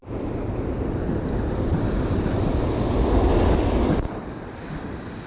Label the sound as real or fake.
real